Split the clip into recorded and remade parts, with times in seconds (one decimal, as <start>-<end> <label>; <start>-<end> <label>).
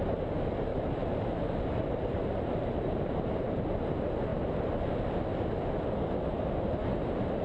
0.0-0.7 recorded; 0.7-3.4 remade; 3.4-7.4 recorded